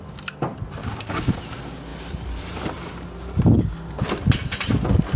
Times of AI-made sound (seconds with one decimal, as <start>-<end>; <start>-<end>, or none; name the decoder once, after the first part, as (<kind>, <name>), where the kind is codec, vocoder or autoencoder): 0.8-1.4 (codec, DAC)